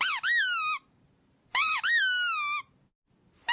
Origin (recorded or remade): recorded